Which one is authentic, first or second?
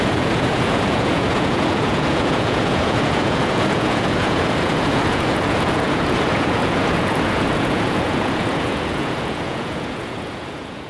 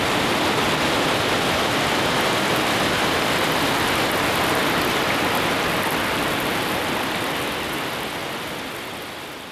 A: second